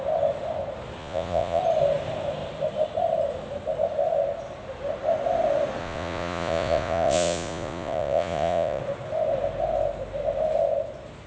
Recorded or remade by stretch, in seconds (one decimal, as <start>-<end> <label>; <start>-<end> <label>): 0.0-1.0 recorded; 1.0-1.6 remade; 1.6-5.8 recorded; 5.8-8.8 remade; 8.8-11.3 recorded